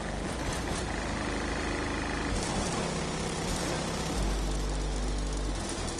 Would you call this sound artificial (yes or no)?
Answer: no